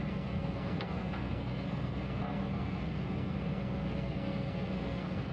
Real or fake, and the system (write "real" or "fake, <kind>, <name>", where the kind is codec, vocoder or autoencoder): fake, codec, SNAC